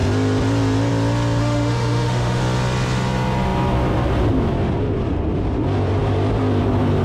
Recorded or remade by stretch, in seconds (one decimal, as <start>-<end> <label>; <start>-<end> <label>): 0.0-1.4 recorded; 1.4-2.4 remade; 2.4-7.0 recorded